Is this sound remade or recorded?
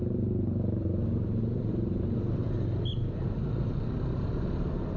recorded